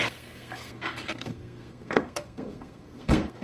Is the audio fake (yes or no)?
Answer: yes